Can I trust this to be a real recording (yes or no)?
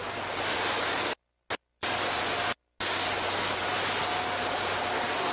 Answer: yes